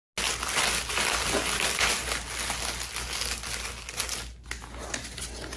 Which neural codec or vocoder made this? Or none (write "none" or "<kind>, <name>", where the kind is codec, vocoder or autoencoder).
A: none